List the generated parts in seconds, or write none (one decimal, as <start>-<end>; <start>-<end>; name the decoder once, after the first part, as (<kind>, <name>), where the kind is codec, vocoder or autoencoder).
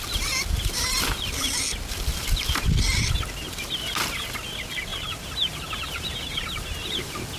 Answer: 4.9-6.9 (vocoder, BigVGAN v2)